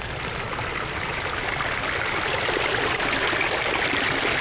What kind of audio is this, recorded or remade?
recorded